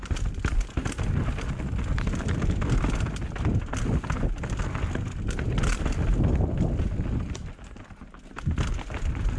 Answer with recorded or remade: recorded